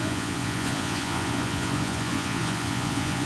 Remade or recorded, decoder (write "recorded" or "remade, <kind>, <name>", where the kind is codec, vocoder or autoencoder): remade, vocoder, Vocos